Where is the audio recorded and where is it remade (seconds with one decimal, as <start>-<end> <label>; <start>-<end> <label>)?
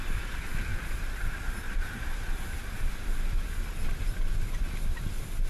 0.0-5.5 recorded